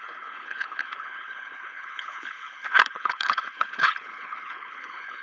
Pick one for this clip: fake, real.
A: fake